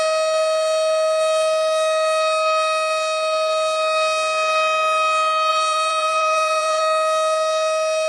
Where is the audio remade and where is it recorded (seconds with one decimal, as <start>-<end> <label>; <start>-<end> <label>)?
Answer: 0.0-5.5 recorded; 5.5-6.8 remade; 6.8-8.1 recorded